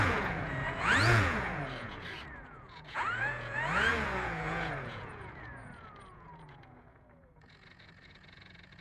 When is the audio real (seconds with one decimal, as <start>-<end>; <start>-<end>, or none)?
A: none